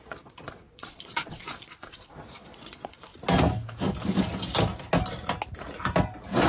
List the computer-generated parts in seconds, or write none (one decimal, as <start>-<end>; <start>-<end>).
0.0-3.1